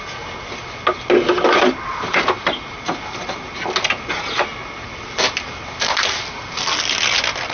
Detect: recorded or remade recorded